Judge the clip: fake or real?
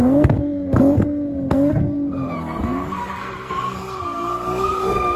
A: fake